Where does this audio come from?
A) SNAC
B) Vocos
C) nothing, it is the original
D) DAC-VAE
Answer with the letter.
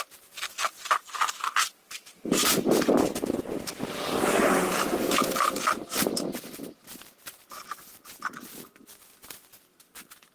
C